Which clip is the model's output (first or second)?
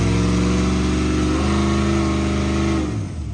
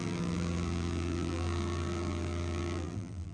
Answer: second